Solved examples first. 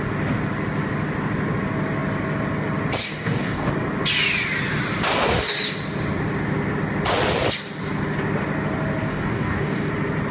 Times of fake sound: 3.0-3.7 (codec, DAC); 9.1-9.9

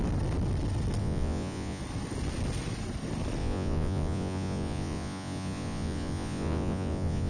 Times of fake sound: 1.0-1.8 (vocoder, Vocos); 3.4-7.3

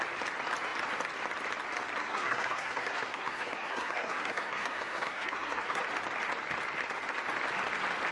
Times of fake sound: 2.0-5.8 (codec, SNAC)

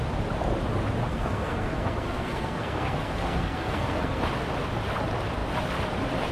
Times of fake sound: 1.1-4.2 (codec, SNAC)

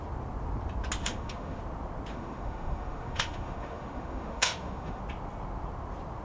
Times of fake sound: 1.0-1.6 (autoencoder, DAC-VAE); 2.1-5.0